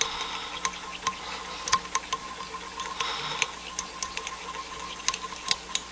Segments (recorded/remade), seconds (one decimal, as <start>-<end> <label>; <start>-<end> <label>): 0.0-5.9 recorded